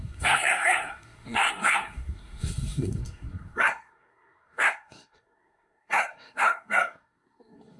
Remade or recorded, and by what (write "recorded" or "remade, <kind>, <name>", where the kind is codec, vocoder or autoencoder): remade, codec, SNAC